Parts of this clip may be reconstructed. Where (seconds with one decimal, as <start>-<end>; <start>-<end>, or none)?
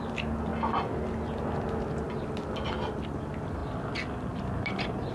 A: 0.0-0.5; 2.7-5.1